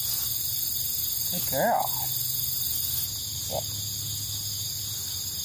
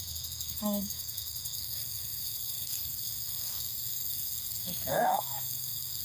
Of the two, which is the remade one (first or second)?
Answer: second